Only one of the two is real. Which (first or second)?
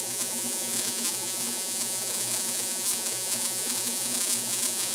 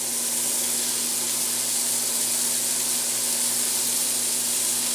second